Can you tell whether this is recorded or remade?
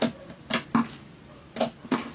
recorded